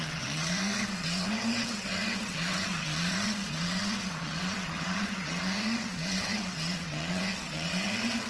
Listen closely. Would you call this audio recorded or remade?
remade